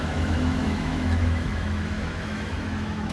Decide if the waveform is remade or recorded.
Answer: remade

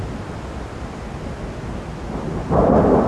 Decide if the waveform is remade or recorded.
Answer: recorded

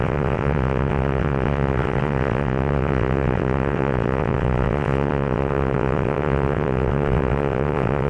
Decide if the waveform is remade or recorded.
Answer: remade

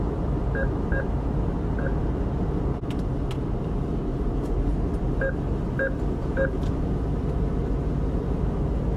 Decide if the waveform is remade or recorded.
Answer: recorded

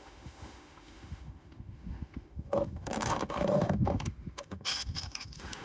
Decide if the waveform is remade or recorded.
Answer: remade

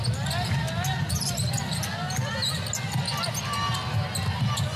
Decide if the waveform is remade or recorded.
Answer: recorded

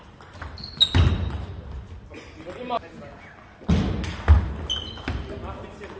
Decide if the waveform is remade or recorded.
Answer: recorded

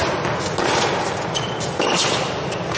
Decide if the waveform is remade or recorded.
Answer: recorded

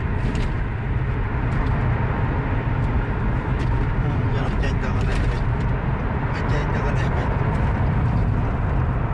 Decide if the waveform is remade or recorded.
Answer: remade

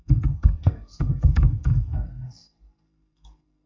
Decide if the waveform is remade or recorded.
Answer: remade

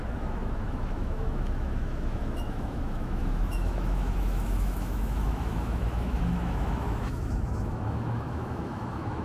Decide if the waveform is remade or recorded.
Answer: remade